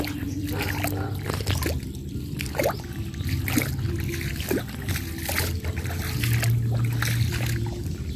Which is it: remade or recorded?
recorded